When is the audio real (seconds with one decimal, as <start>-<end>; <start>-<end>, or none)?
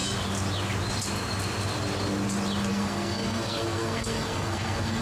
0.0-2.7